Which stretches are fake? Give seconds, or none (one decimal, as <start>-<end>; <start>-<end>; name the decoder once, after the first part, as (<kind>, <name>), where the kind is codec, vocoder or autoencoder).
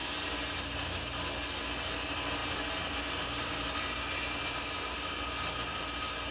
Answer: none